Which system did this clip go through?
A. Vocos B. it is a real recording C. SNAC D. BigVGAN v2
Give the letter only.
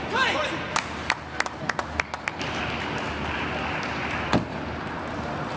B